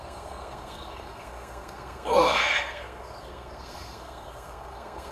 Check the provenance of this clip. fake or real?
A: fake